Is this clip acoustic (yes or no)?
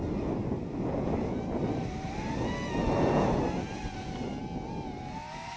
yes